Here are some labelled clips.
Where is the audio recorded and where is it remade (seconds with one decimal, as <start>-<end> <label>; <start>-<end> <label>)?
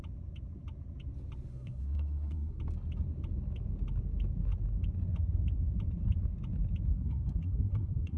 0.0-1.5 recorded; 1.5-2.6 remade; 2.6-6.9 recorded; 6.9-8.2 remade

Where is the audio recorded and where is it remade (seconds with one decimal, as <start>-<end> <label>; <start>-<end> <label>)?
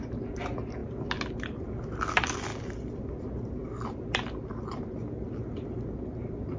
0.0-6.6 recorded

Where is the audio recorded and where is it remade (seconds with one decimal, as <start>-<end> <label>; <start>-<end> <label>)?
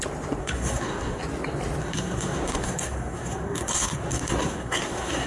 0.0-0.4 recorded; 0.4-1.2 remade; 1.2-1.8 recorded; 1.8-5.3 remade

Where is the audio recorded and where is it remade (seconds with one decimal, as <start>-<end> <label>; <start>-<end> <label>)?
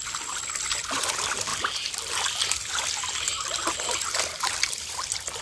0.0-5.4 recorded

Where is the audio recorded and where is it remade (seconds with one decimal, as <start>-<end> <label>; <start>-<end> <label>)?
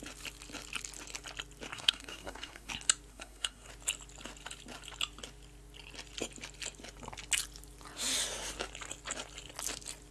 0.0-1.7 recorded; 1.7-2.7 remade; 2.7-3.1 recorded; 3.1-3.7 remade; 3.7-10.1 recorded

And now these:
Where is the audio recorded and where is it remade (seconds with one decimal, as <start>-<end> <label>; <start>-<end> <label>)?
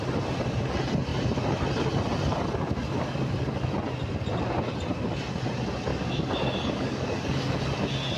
0.0-5.9 recorded; 5.9-7.6 remade; 7.6-8.2 recorded